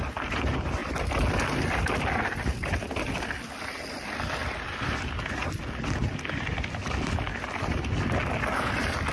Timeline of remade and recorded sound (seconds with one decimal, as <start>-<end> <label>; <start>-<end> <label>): 0.0-9.1 recorded